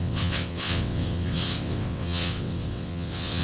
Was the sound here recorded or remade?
remade